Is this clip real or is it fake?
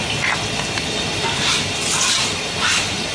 real